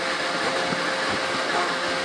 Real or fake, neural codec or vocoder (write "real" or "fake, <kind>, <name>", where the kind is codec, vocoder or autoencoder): real